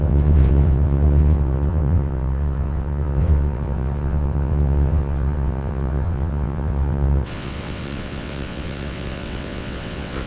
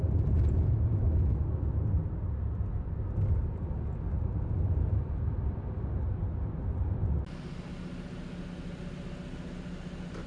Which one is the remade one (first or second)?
first